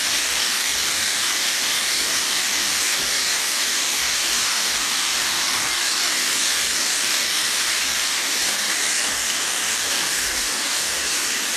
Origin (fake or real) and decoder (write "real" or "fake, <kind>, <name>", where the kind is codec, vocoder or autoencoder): fake, codec, DAC